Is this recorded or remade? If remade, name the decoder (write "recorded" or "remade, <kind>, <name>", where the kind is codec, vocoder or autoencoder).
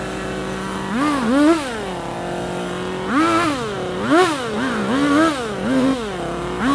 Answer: recorded